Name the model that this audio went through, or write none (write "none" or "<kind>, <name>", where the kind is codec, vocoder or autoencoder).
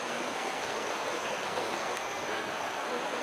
codec, SNAC